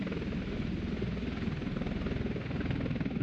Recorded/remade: recorded